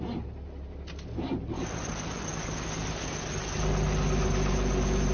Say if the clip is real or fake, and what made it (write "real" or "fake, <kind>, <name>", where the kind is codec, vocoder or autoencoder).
real